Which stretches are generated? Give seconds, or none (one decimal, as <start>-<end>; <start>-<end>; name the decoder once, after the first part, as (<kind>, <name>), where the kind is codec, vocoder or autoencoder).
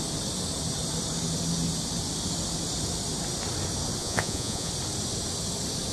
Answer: 4.0-4.7 (vocoder, Vocos)